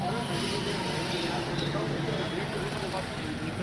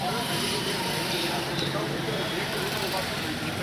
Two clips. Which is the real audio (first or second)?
first